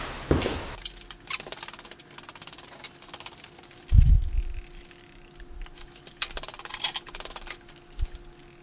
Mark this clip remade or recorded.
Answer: recorded